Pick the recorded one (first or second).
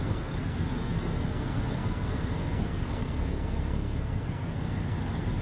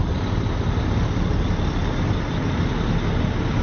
second